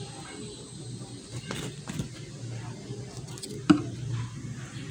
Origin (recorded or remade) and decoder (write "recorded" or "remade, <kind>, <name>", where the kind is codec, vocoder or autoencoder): recorded